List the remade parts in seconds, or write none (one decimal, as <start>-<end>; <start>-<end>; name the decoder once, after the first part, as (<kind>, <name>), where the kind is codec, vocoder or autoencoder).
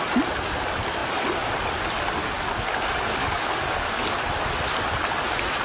2.2-2.8 (codec, DAC); 3.2-4.2